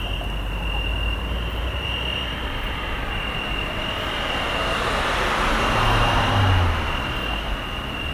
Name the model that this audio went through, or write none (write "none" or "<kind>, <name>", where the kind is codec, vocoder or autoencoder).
none